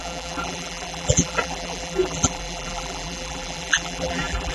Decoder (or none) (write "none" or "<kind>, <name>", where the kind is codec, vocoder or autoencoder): vocoder, BigVGAN v2